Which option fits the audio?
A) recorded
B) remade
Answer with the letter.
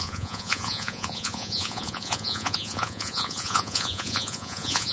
B